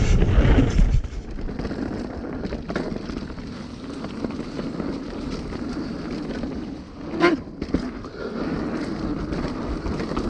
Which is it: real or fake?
real